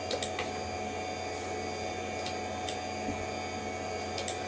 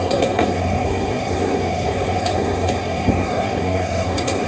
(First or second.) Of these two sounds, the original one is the first